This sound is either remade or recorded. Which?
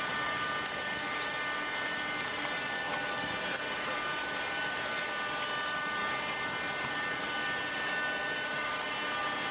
recorded